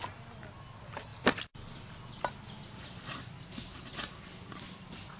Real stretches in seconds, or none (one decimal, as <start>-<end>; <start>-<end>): 0.0-5.2

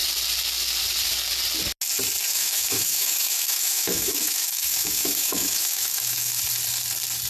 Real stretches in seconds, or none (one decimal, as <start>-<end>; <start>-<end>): 0.0-2.3; 6.4-7.3

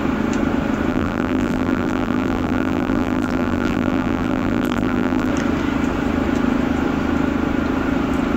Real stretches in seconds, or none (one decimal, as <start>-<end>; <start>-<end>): 0.0-0.9; 5.3-8.4

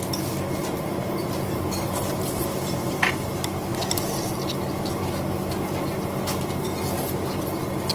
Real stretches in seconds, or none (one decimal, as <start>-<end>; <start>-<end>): 0.0-0.6; 3.3-7.9

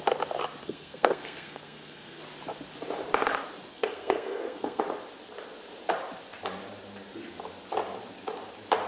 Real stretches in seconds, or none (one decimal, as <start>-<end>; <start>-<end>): 0.0-0.6; 2.2-3.7; 4.8-8.9